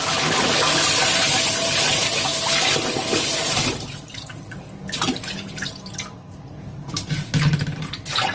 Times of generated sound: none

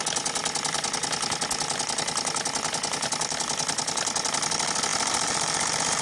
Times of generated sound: 4.9-6.0 (vocoder, BigVGAN v2)

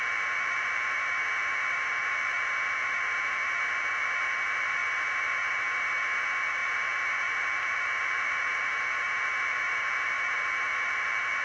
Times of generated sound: 0.0-11.4 (vocoder, BigVGAN v2)

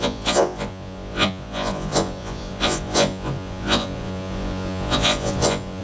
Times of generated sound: 0.0-5.8 (vocoder, Vocos)

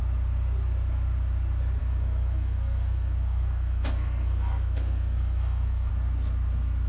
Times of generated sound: 1.8-5.9 (codec, SNAC)

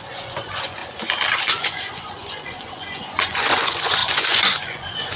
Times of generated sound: 0.0-0.8 (vocoder, Vocos); 1.4-5.2

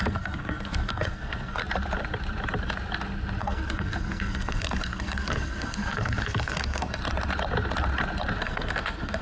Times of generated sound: 0.0-1.6 (codec, SNAC); 3.4-7.0; 8.4-9.2